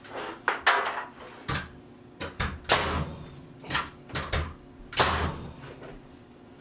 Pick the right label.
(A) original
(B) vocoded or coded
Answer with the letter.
A